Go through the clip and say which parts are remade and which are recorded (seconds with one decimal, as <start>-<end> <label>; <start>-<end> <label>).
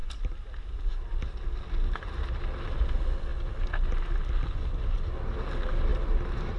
0.0-0.9 remade; 0.9-5.9 recorded; 5.9-6.6 remade